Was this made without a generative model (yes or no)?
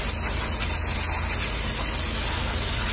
yes